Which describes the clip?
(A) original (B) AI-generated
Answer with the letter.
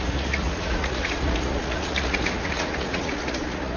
B